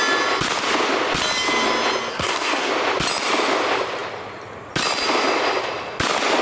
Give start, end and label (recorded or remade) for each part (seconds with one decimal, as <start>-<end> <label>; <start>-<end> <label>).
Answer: 0.0-2.1 recorded; 2.1-2.7 remade; 2.7-6.4 recorded